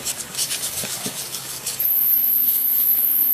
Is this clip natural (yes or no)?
no